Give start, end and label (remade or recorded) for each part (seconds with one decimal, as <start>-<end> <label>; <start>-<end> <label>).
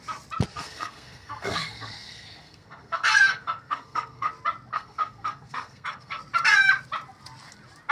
0.0-0.5 recorded; 0.5-4.3 remade; 4.3-4.7 recorded; 4.7-6.2 remade; 6.2-7.9 recorded